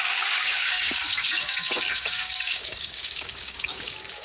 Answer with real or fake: fake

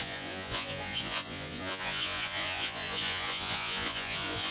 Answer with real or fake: fake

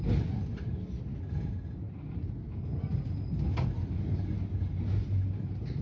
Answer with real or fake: real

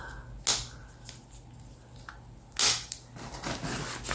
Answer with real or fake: real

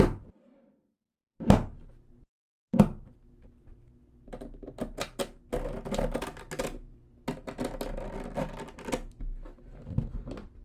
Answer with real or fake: real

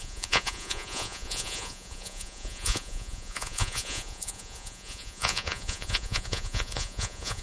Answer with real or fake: fake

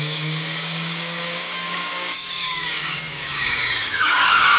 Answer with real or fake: fake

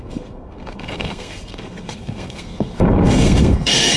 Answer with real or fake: fake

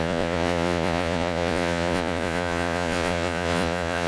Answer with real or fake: fake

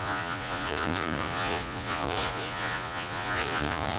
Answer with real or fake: fake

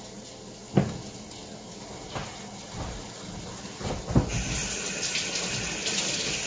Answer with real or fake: real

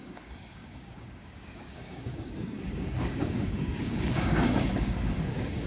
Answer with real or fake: fake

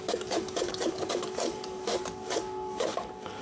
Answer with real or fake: fake